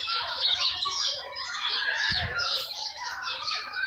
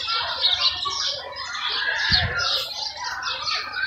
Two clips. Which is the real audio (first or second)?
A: second